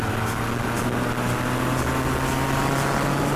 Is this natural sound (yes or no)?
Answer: yes